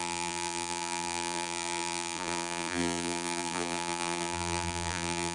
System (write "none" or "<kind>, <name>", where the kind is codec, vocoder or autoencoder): vocoder, BigVGAN v2